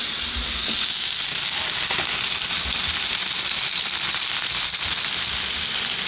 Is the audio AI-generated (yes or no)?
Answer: no